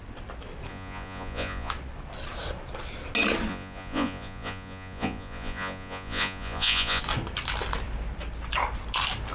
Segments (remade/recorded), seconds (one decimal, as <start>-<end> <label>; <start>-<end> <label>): 0.0-0.7 recorded; 0.7-1.7 remade; 1.7-3.5 recorded; 3.5-7.0 remade; 7.0-9.3 recorded